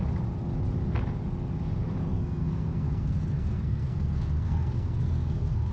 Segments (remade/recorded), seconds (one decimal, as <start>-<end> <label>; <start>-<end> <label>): 0.0-2.0 recorded; 2.0-5.7 remade